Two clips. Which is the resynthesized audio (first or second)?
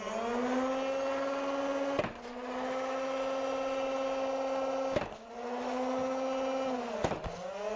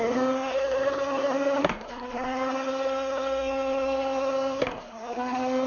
second